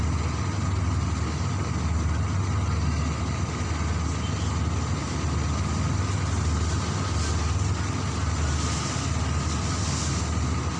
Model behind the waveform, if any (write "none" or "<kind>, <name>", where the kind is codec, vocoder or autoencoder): none